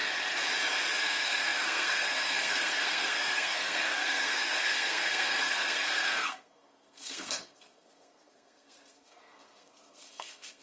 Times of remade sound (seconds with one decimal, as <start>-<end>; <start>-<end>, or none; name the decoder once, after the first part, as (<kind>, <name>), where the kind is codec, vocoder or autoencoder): 1.0-10.6 (codec, SNAC)